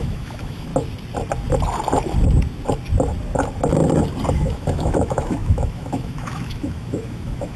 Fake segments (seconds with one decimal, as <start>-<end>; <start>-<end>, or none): 0.0-0.7; 4.3-7.6